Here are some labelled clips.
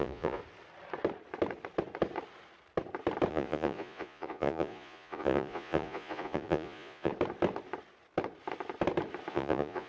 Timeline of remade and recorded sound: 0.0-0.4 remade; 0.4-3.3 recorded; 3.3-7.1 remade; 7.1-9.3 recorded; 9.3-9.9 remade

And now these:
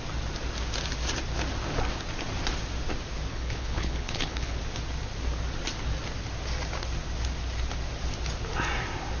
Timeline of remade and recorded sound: 0.0-3.3 recorded; 3.3-4.6 remade; 4.6-9.2 recorded

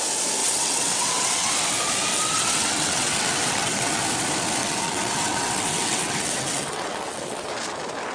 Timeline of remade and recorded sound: 0.0-0.4 recorded; 0.4-1.5 remade; 1.5-2.1 recorded; 2.1-4.0 remade; 4.0-4.6 recorded; 4.6-7.5 remade; 7.5-8.1 recorded

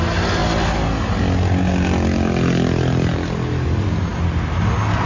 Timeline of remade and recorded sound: 0.0-5.1 recorded

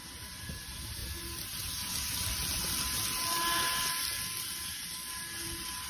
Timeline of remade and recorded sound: 0.0-5.9 recorded